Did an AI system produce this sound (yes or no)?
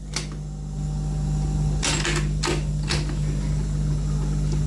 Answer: no